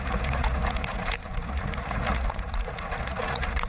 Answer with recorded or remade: remade